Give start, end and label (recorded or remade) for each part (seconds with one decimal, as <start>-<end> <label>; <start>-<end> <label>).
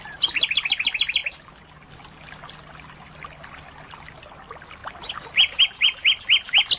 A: 0.0-6.8 recorded